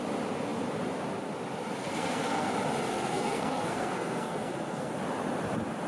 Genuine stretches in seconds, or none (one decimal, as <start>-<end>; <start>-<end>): 0.0-1.8; 2.5-2.9; 4.9-5.9